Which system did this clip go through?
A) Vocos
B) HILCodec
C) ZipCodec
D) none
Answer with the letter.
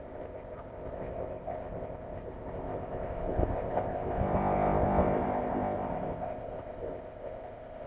C